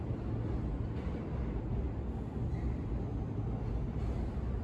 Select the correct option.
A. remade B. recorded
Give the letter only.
B